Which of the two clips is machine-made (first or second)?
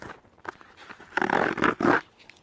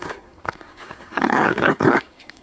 second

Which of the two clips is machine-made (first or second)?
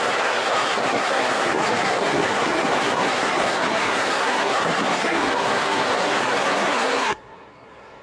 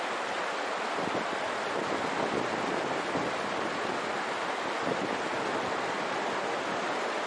first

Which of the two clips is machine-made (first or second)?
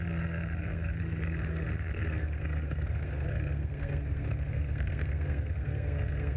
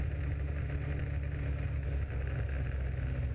first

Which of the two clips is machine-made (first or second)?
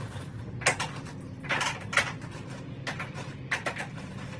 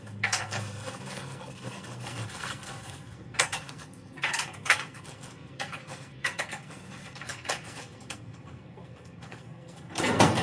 second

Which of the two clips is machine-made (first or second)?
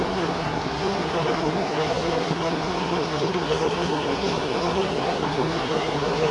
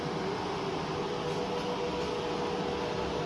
first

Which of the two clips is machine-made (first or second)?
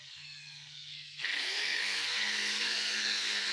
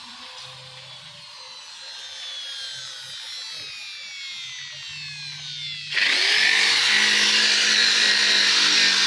first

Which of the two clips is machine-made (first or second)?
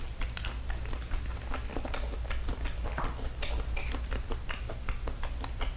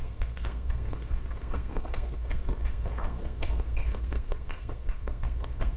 second